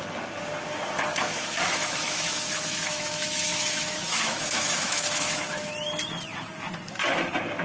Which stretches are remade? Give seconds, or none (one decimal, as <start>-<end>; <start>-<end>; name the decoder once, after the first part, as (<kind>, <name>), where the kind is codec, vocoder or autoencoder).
1.1-5.7 (autoencoder, DAC-VAE)